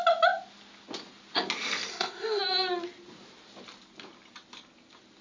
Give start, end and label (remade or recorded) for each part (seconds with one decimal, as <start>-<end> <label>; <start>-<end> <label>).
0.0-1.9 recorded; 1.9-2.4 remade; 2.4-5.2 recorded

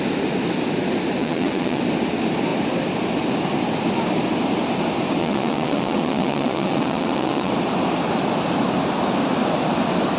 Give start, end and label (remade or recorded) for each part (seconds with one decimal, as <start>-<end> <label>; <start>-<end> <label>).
0.0-1.2 recorded; 1.2-1.8 remade; 1.8-5.2 recorded; 5.2-7.5 remade; 7.5-10.2 recorded

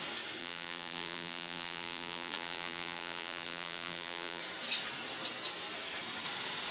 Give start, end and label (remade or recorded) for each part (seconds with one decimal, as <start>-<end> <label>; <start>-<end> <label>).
0.0-0.4 recorded; 0.4-4.4 remade; 4.4-6.7 recorded